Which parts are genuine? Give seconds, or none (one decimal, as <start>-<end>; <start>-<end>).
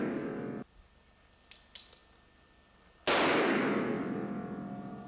0.0-5.1